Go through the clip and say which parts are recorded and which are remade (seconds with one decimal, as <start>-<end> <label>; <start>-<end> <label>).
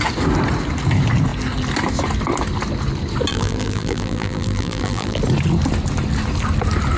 0.0-3.3 recorded; 3.3-5.2 remade; 5.2-7.0 recorded